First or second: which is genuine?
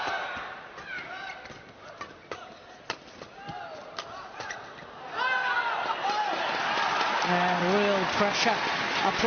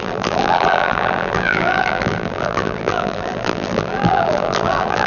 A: first